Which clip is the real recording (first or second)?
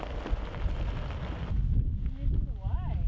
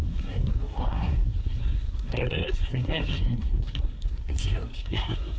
first